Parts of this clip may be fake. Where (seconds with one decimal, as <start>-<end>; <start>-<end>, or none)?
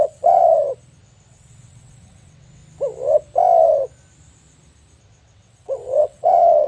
0.0-0.4; 1.0-2.6; 5.0-6.7